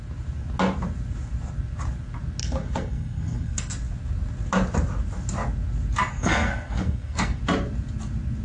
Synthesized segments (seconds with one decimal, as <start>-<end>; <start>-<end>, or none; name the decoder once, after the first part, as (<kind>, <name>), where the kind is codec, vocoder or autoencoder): 2.4-3.7 (codec, SNAC); 6.1-7.4